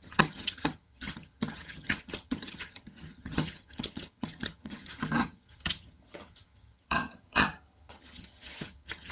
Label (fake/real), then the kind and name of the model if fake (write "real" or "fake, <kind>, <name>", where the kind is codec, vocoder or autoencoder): fake, vocoder, HiFi-GAN